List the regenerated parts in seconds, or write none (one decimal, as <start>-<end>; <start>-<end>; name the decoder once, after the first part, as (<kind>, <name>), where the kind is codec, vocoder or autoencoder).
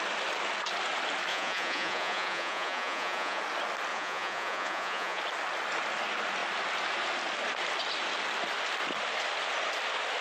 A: 1.3-3.4 (vocoder, Vocos); 3.9-5.2